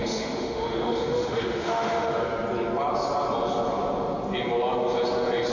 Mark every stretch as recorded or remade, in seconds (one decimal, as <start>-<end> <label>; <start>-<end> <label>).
0.0-2.2 remade; 2.2-5.5 recorded